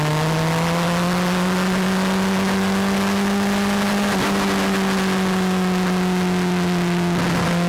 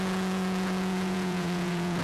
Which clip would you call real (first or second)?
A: first